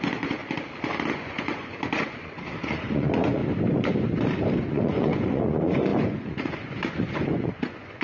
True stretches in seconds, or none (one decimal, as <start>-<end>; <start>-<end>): 0.4-1.1; 3.4-4.7